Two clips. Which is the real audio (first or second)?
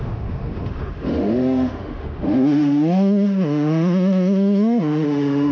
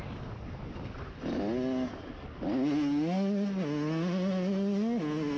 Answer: second